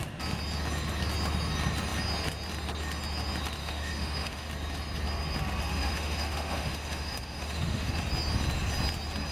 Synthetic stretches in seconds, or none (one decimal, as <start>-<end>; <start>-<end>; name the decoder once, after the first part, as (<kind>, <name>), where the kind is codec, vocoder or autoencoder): 3.6-4.5 (autoencoder, DAC-VAE); 5.7-8.0